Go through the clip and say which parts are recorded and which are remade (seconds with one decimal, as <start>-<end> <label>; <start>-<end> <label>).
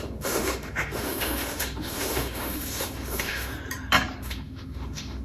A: 0.0-3.5 remade; 3.5-4.2 recorded; 4.2-5.2 remade